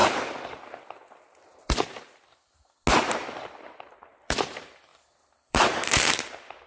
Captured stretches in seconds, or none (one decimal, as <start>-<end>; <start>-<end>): 0.0-3.8